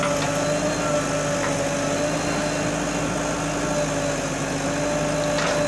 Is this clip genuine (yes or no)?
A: yes